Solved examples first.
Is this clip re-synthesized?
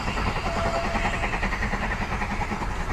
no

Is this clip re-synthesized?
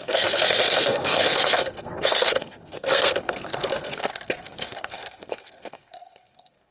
yes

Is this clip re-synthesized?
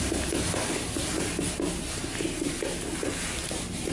no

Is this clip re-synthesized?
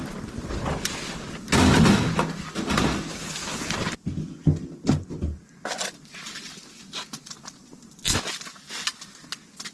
no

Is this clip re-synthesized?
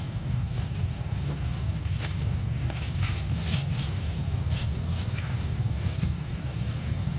yes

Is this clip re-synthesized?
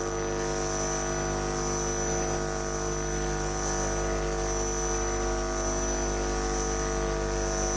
no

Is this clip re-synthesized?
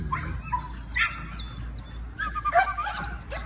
no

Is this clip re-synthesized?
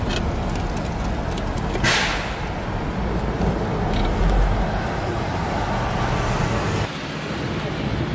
no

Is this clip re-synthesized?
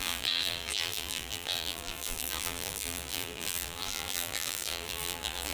yes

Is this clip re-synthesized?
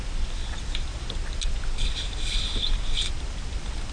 no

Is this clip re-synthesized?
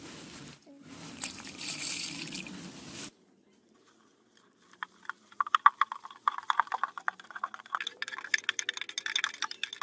no